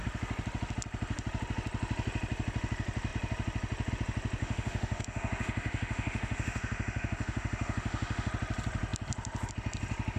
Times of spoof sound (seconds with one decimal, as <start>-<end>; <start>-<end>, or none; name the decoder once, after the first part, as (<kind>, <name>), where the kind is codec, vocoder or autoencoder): 4.4-8.3 (autoencoder, DAC-VAE)